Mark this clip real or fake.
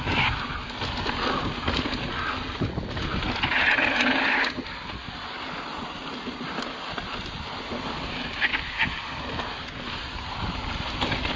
real